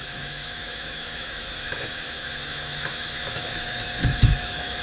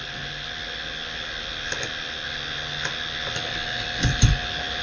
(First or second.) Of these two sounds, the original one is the second